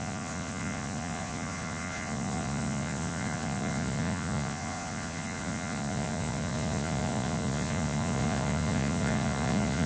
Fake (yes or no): yes